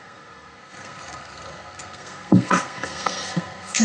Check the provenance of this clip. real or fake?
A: fake